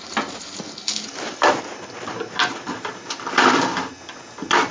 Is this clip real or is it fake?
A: real